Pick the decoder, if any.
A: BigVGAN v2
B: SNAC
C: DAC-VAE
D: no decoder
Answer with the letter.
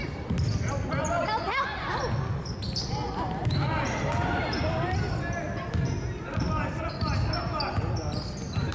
D